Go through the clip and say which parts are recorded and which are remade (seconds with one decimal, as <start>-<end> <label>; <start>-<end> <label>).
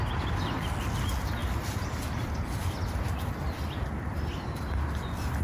0.0-1.4 recorded; 1.4-4.6 remade; 4.6-5.4 recorded